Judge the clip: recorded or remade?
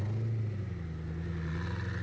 recorded